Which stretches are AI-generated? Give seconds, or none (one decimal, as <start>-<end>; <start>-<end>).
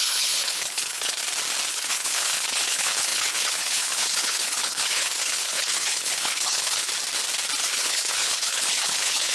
0.0-1.2; 1.7-6.9; 7.6-9.3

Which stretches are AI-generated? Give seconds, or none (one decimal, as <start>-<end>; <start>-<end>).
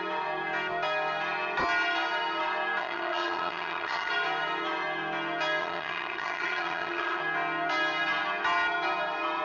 2.8-4.1; 5.6-7.2